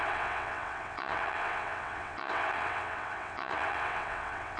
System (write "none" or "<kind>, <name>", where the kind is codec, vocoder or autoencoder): vocoder, WaveNeXt